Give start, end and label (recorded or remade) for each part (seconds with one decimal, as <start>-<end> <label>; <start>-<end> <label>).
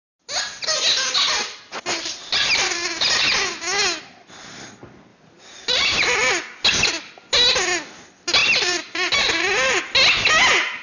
0.0-1.7 recorded; 1.7-3.3 remade; 3.3-5.1 recorded; 5.1-6.3 remade; 6.3-8.4 recorded; 8.4-9.8 remade; 9.8-10.8 recorded